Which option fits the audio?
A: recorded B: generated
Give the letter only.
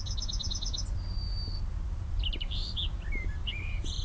A